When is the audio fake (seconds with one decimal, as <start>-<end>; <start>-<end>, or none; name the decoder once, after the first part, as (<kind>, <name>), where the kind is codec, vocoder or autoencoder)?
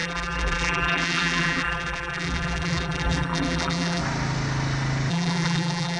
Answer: 0.0-4.0 (vocoder, BigVGAN v2); 5.1-6.0